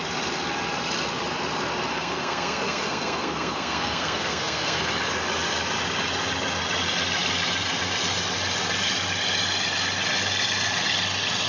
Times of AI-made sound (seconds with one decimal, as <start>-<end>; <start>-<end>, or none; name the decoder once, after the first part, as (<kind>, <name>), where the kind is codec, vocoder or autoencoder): 1.9-4.9 (codec, SNAC)